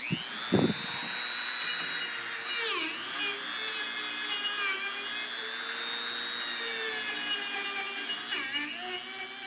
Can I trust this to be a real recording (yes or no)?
yes